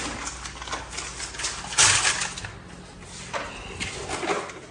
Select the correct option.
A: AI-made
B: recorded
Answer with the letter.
B